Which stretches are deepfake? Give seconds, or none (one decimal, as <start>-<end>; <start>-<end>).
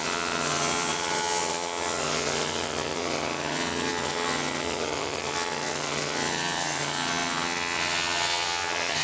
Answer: 0.0-9.0